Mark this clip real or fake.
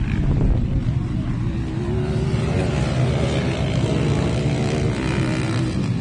real